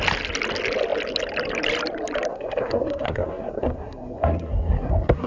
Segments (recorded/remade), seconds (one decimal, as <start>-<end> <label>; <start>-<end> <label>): 0.0-2.3 recorded; 2.3-5.3 remade

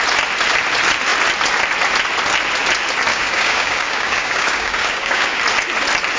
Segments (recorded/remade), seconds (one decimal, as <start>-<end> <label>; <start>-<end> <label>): 0.0-3.1 recorded; 3.1-5.4 remade; 5.4-6.2 recorded

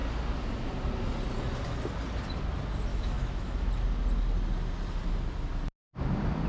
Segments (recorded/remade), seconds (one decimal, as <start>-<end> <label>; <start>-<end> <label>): 0.0-2.9 recorded; 2.9-3.7 remade; 3.7-6.5 recorded

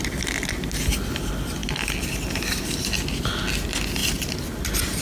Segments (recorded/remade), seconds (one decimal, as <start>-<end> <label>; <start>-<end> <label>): 0.0-5.0 recorded

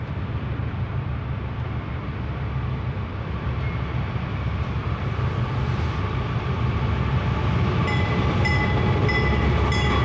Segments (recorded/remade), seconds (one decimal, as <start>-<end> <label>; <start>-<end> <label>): 0.0-0.6 recorded; 0.6-1.1 remade; 1.1-4.8 recorded; 4.8-7.2 remade; 7.2-10.0 recorded

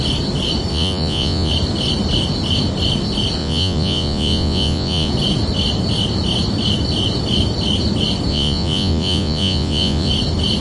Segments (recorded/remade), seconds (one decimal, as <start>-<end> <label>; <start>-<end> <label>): 0.0-0.7 recorded; 0.7-1.5 remade; 1.5-3.4 recorded; 3.4-5.1 remade; 5.1-8.3 recorded; 8.3-10.1 remade; 10.1-10.6 recorded

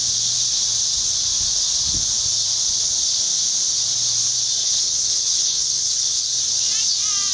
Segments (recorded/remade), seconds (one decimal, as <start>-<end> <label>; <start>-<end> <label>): 0.0-4.6 recorded; 4.6-6.4 remade; 6.4-7.3 recorded